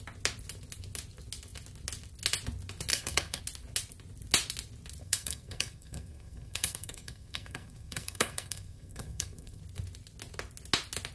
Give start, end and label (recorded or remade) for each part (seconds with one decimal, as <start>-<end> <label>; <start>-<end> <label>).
0.0-2.9 recorded; 2.9-3.4 remade; 3.4-5.0 recorded; 5.0-9.6 remade; 9.6-11.1 recorded